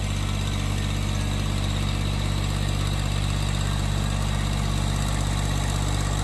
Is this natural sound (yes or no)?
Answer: yes